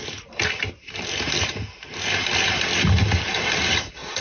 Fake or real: real